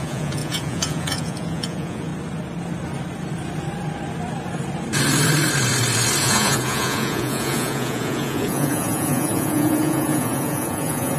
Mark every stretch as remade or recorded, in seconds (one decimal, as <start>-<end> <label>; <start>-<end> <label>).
0.0-2.1 remade; 2.1-6.2 recorded; 6.2-11.2 remade